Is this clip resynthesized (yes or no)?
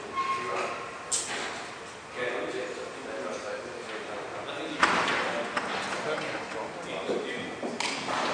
no